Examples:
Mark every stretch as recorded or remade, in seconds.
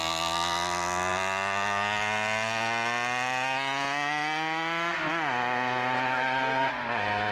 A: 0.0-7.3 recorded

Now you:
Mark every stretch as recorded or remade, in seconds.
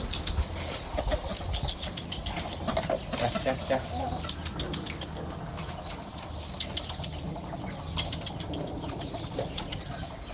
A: 0.0-10.3 recorded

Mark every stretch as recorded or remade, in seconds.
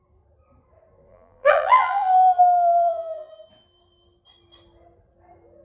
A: 0.0-1.1 recorded; 1.1-3.3 remade; 3.3-5.6 recorded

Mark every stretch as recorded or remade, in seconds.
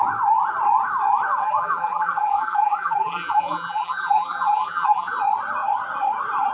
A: 0.0-1.4 recorded; 1.4-5.1 remade; 5.1-6.5 recorded